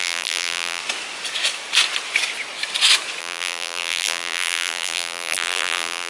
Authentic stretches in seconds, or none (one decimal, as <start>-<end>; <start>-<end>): 0.8-3.2